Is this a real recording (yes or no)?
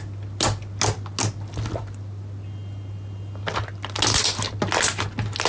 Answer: yes